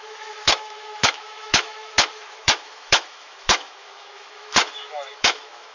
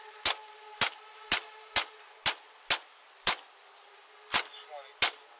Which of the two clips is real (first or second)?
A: second